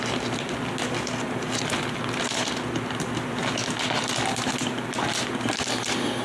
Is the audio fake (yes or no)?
no